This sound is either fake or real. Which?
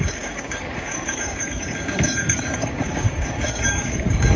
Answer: fake